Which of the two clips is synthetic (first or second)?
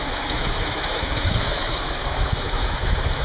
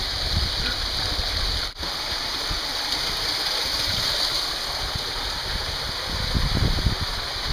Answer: first